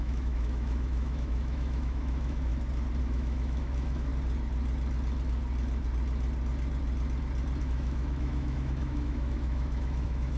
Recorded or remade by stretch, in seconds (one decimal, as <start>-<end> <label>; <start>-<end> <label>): 0.0-2.5 remade; 2.5-3.0 recorded; 3.0-4.1 remade; 4.1-7.6 recorded; 7.6-10.4 remade